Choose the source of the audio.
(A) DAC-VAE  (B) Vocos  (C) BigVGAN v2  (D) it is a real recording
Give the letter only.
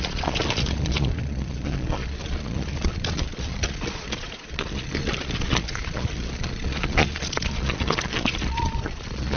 B